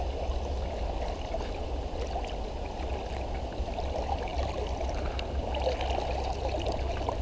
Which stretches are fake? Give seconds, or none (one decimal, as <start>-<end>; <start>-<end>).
4.3-5.4